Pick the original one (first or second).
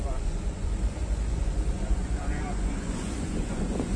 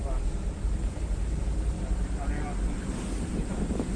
second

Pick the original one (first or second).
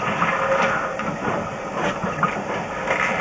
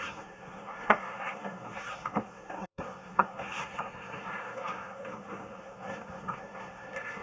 first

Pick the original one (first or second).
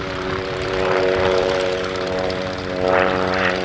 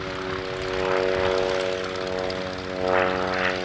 second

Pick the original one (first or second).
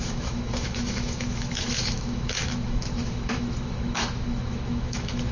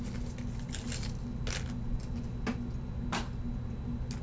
second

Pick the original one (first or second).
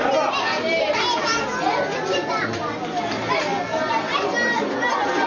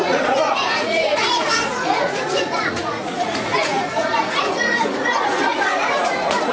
first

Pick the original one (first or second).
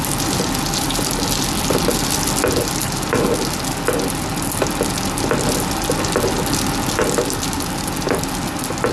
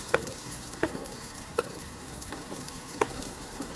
first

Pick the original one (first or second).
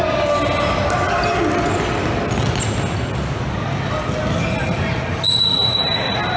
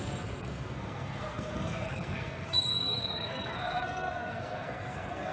first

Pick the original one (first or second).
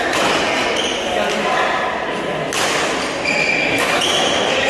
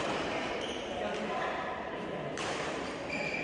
first